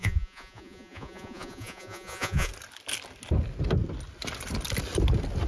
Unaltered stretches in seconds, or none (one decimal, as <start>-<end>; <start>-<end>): 2.5-5.5